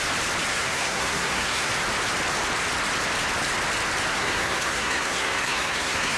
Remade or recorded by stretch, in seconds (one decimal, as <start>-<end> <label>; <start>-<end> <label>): 0.0-0.5 recorded; 0.5-1.7 remade; 1.7-4.1 recorded; 4.1-6.2 remade